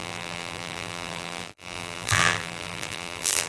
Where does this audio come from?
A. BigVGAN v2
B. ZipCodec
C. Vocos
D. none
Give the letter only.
A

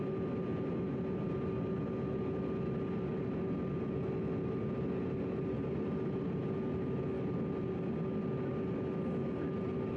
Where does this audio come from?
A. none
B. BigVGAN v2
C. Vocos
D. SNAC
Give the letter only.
A